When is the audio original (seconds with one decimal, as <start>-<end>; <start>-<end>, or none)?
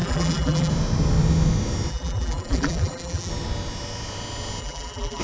0.7-1.9; 3.3-4.6